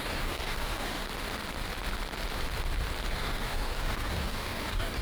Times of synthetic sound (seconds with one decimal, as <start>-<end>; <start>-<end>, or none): 0.0-1.0; 3.1-5.0